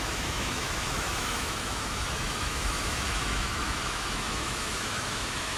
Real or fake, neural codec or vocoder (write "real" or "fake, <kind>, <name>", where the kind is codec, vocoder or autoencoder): fake, autoencoder, DAC-VAE